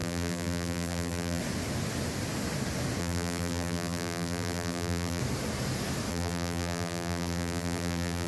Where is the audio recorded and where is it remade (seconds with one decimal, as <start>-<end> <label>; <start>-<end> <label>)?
0.0-1.4 remade; 1.4-3.0 recorded; 3.0-5.2 remade; 5.2-6.1 recorded; 6.1-8.3 remade